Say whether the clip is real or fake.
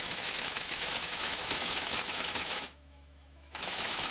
fake